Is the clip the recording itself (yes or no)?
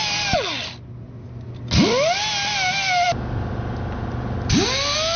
yes